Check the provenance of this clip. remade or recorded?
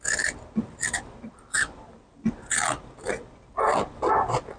recorded